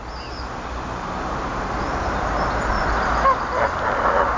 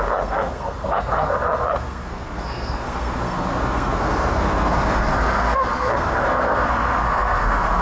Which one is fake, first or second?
second